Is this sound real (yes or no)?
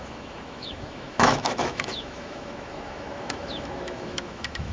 no